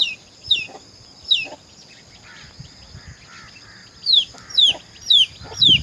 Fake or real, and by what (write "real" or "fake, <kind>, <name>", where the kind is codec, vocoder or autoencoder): real